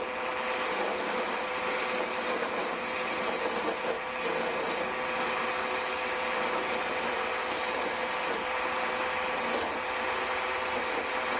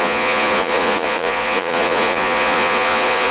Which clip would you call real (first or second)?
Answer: first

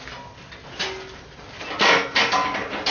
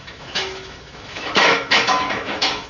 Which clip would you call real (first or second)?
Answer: first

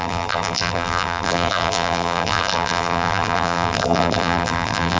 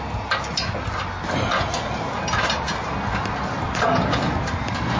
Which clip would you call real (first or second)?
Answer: second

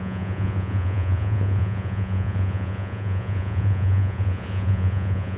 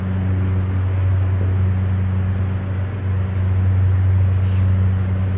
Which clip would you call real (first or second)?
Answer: second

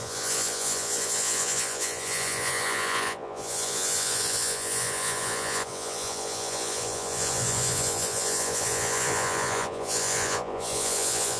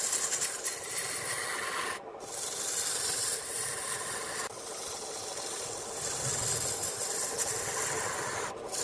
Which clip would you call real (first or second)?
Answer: second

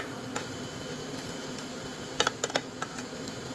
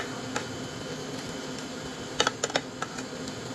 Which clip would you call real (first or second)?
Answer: second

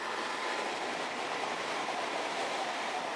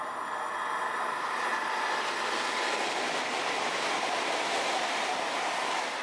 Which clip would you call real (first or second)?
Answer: second